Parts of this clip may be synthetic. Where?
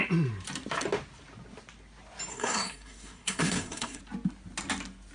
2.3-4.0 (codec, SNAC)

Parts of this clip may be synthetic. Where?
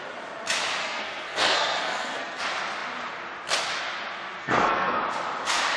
0.8-2.4 (codec, SNAC); 4.4-5.0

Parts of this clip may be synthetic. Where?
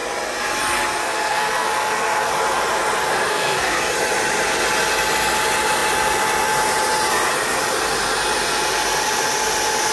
1.0-2.3 (codec, SNAC); 3.3-3.8